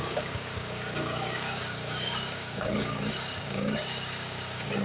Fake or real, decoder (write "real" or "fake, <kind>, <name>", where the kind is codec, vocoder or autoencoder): fake, codec, DAC